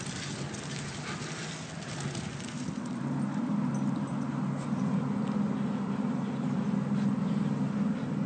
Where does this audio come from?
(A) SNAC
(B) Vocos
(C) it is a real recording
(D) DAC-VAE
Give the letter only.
C